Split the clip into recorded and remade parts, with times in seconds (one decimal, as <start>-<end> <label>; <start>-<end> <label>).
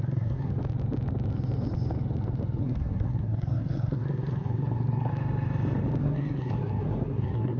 0.0-0.5 remade; 0.5-2.6 recorded; 2.6-5.1 remade; 5.1-6.0 recorded; 6.0-7.6 remade